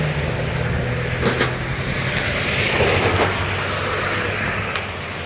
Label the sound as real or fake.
real